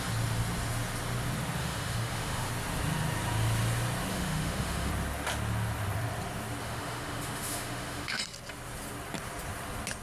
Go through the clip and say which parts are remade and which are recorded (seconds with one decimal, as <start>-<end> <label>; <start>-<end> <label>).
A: 0.0-1.6 recorded; 1.6-2.5 remade; 2.5-4.1 recorded; 4.1-4.9 remade; 4.9-6.6 recorded; 6.6-8.2 remade; 8.2-10.0 recorded